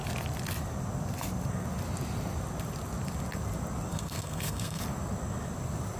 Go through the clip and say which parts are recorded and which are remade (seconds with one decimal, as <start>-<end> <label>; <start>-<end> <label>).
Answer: 0.0-3.9 recorded; 3.9-4.8 remade; 4.8-6.0 recorded

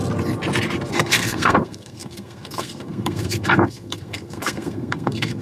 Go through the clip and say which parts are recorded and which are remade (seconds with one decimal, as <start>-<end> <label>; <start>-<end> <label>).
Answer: 0.0-0.9 recorded; 0.9-5.4 remade

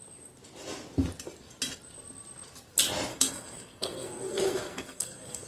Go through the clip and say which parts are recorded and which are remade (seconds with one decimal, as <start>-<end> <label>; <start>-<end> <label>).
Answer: 0.0-3.1 recorded; 3.1-5.5 remade

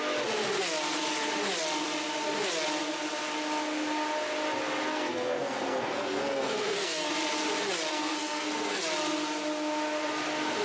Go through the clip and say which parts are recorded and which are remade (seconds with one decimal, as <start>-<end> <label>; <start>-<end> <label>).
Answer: 0.0-4.9 recorded; 4.9-7.1 remade; 7.1-7.9 recorded; 7.9-8.8 remade; 8.8-10.6 recorded

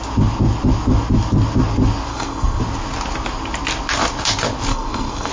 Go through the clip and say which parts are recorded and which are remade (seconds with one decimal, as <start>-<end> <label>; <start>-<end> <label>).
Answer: 0.0-2.1 recorded; 2.1-2.6 remade; 2.6-4.7 recorded; 4.7-5.3 remade

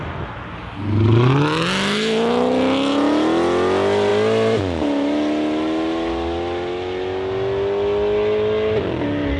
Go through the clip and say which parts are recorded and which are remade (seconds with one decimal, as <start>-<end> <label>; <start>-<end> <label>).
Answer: 0.0-9.4 recorded